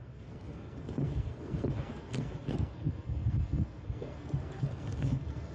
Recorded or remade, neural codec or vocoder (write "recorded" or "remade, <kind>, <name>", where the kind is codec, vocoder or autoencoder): remade, codec, SNAC